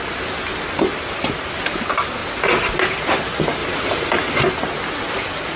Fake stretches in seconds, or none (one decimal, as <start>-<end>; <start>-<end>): 3.6-4.4